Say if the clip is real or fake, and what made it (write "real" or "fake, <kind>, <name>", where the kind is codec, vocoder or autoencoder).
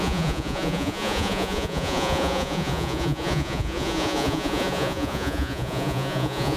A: fake, vocoder, Vocos